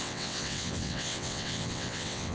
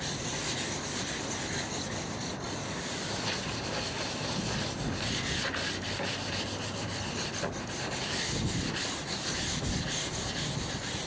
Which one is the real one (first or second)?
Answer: second